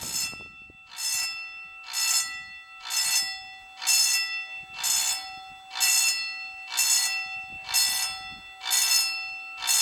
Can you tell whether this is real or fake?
real